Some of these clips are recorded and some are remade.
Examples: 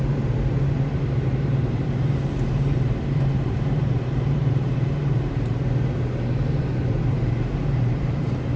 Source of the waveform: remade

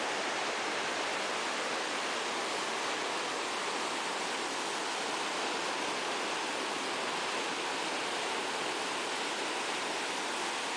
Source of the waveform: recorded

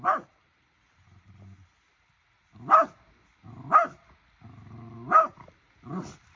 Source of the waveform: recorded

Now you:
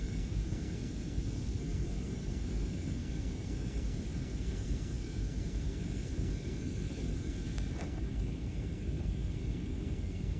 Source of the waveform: remade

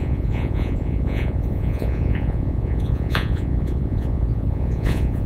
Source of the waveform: remade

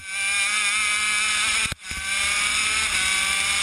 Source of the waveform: recorded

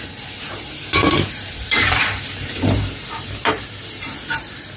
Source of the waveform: remade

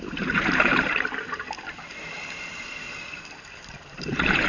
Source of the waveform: remade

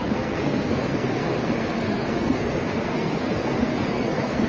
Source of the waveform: remade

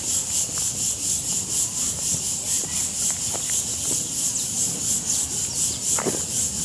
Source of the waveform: recorded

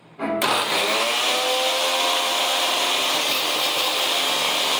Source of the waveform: recorded